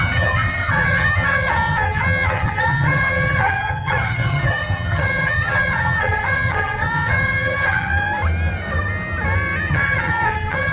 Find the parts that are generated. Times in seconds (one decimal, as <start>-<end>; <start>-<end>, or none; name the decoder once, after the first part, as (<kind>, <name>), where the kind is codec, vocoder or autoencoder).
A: 0.0-7.9 (vocoder, HiFi-GAN); 9.7-10.7